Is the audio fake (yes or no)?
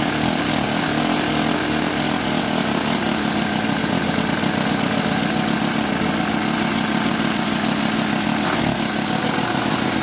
no